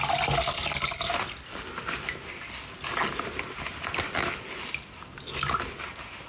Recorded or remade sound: recorded